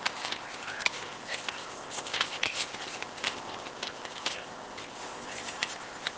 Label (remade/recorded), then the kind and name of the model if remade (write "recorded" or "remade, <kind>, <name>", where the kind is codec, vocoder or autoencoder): remade, codec, ZipCodec